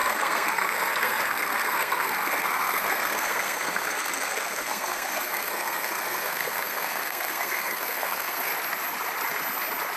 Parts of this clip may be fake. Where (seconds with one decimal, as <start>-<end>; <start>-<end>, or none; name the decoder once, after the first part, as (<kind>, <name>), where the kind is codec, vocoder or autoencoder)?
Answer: 0.0-8.5 (codec, SNAC)